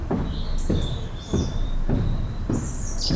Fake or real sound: fake